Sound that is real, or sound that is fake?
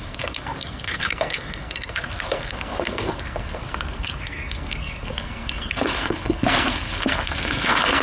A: fake